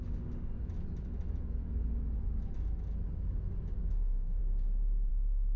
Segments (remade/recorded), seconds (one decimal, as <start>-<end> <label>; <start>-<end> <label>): 0.0-0.5 remade; 0.5-3.9 recorded; 3.9-4.4 remade; 4.4-5.1 recorded; 5.1-5.6 remade